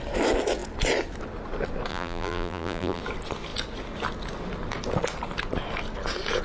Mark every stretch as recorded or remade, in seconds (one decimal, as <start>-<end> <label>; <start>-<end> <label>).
0.0-1.9 recorded; 1.9-3.0 remade; 3.0-6.4 recorded

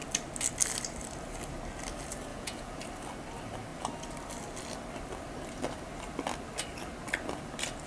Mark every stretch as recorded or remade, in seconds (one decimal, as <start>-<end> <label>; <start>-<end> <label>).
0.0-2.3 recorded; 2.3-2.8 remade; 2.8-7.9 recorded

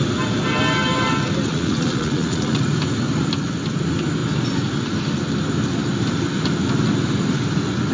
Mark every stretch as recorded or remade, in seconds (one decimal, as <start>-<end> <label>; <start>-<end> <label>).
0.0-1.5 recorded; 1.5-2.6 remade; 2.6-7.9 recorded